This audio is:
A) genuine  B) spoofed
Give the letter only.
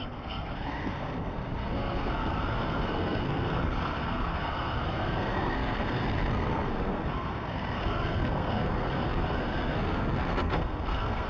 B